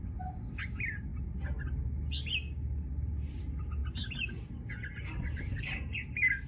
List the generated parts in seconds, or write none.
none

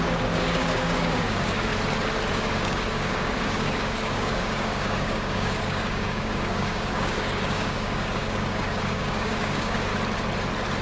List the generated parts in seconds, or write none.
0.0-1.7; 2.3-9.9

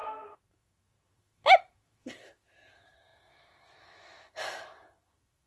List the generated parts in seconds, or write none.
0.0-5.5

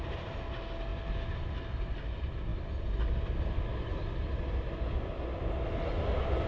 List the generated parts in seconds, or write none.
none

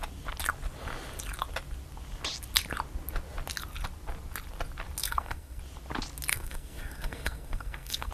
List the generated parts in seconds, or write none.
5.0-5.6; 6.3-8.1